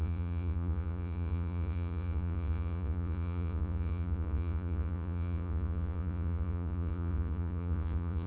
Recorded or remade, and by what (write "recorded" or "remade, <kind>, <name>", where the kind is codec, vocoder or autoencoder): remade, vocoder, Vocos